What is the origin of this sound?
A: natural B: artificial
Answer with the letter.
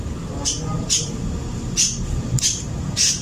B